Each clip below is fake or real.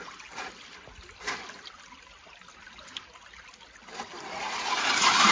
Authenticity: real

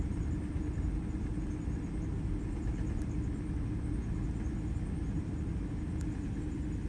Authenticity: real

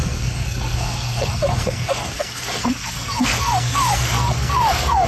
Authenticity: fake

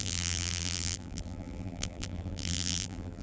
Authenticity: fake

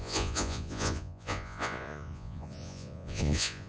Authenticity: fake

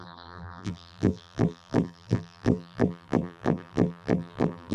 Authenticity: fake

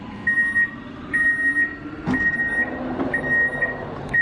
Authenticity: real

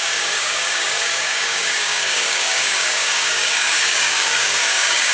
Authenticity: fake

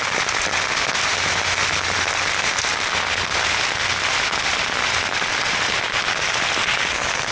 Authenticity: real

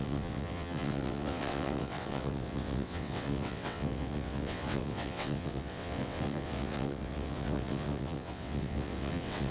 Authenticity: fake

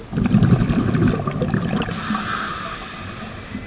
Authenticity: real